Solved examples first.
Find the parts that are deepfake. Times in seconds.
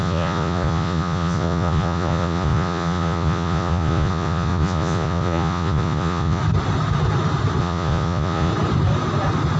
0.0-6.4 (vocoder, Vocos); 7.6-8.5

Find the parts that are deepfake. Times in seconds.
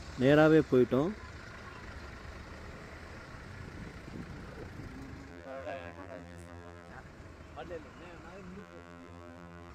5.3-6.9 (vocoder, BigVGAN v2); 8.6-9.7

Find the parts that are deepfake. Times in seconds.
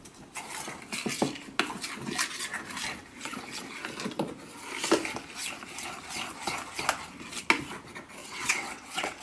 8.2-9.2 (vocoder, WaveNeXt)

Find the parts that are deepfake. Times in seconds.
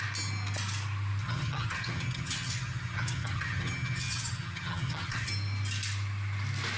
1.2-5.3 (vocoder, HiFi-GAN)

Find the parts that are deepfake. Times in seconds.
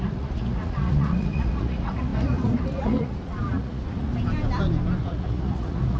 0.0-4.1 (vocoder, Vocos); 5.0-6.0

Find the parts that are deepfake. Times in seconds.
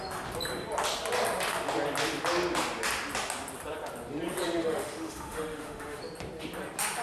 4.6-6.0 (autoencoder, DAC-VAE)